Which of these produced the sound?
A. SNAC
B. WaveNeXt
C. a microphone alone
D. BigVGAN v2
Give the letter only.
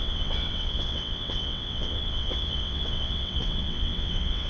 B